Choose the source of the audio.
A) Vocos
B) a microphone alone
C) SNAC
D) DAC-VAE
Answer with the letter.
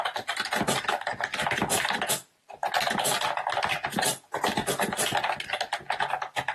B